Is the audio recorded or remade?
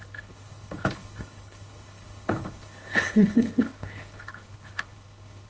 remade